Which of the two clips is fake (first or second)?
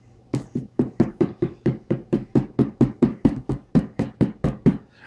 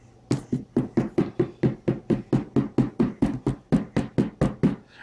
first